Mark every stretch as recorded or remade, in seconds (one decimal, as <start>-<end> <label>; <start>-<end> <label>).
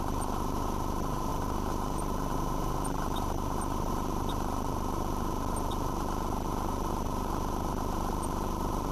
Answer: 0.0-8.9 recorded